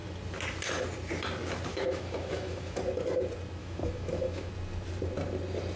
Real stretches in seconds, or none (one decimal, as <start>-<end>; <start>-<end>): 0.0-1.7; 2.8-3.6; 4.5-5.8